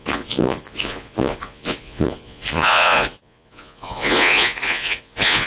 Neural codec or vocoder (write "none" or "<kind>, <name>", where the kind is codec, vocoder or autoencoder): vocoder, Vocos